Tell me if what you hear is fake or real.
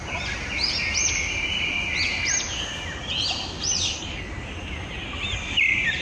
real